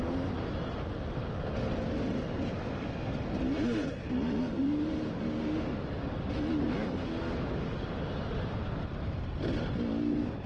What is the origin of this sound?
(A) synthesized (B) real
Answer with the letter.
B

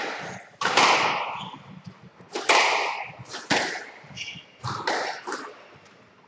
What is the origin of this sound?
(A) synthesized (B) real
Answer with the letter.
B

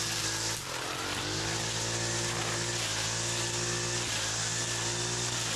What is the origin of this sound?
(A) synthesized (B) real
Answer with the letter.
B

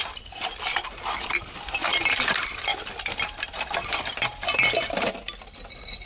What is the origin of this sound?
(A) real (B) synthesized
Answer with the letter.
B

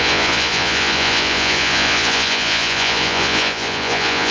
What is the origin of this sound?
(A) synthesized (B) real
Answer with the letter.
A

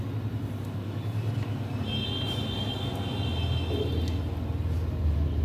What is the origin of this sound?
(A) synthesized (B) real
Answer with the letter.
B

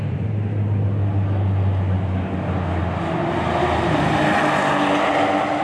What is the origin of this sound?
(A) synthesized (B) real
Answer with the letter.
B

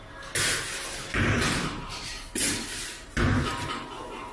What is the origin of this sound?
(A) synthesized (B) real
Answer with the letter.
B